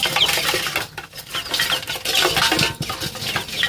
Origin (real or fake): real